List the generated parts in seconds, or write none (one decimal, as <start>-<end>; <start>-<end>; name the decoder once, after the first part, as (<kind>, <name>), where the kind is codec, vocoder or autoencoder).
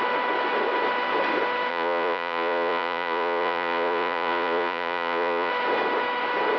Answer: 1.7-5.5 (vocoder, Vocos)